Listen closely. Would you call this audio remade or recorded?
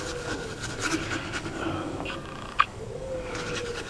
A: remade